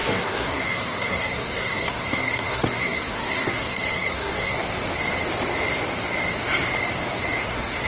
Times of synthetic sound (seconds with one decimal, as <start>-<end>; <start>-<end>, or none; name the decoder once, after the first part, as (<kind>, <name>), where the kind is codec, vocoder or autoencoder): 0.0-4.7 (codec, SNAC); 7.4-7.9